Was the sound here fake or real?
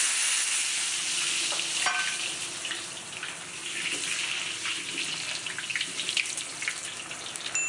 real